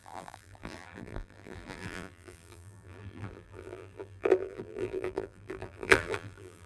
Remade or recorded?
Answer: remade